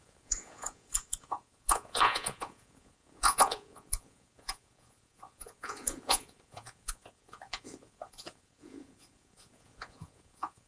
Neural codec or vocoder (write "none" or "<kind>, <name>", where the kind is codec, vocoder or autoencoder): vocoder, Vocos